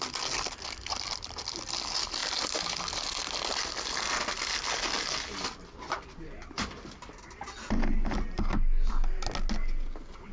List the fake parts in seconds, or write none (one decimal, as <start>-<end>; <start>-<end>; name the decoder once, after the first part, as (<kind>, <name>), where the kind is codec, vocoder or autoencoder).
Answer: 2.2-2.7 (vocoder, BigVGAN v2)